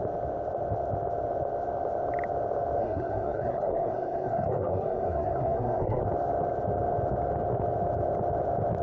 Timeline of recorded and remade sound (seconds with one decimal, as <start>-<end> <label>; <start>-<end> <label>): 0.0-2.8 recorded; 2.8-6.0 remade; 6.0-8.8 recorded